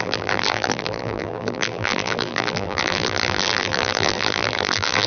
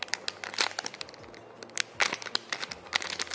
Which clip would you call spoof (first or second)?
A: first